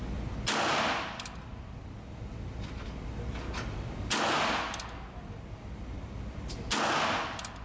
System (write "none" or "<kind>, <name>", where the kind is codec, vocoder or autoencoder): none